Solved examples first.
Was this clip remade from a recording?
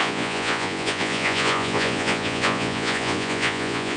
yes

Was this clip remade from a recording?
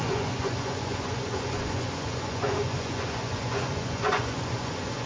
yes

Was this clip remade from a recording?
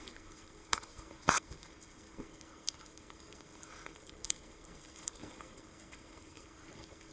yes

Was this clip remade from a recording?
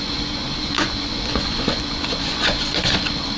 yes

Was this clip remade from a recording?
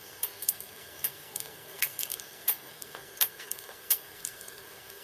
yes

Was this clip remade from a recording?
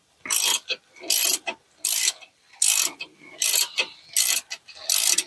no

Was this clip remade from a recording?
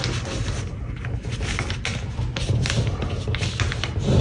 no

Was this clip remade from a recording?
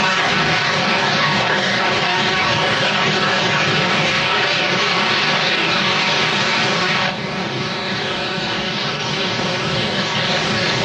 yes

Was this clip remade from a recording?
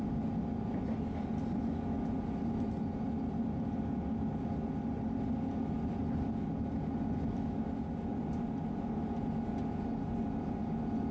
no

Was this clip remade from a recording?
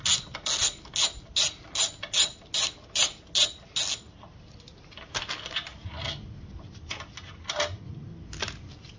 no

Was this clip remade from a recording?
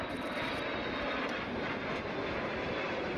no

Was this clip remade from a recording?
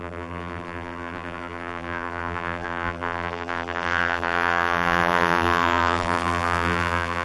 yes